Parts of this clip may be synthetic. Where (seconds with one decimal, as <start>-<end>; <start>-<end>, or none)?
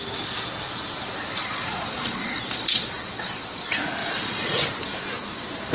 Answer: 1.4-3.4; 4.0-4.6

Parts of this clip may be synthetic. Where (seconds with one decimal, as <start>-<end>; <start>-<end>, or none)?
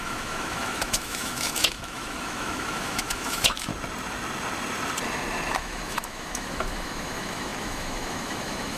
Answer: 0.0-3.7; 5.5-8.8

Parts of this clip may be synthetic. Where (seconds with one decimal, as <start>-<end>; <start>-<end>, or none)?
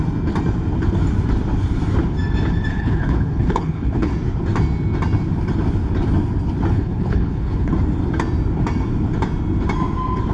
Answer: 2.7-4.1; 6.7-7.7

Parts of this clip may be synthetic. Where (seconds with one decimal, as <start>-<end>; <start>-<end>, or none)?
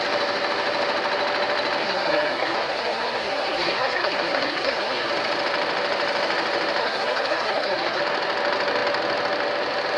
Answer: 1.8-5.1; 6.8-8.0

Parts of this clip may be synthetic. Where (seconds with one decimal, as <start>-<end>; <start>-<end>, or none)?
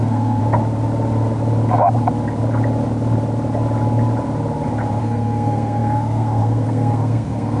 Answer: 0.0-0.4; 5.0-7.6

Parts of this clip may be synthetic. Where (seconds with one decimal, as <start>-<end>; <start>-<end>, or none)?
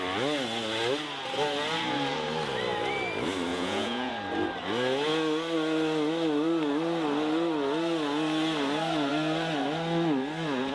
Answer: 3.5-4.1